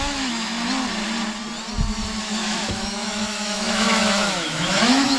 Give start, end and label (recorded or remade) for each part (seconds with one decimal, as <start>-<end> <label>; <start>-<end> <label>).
0.0-0.5 remade; 0.5-2.2 recorded; 2.2-5.2 remade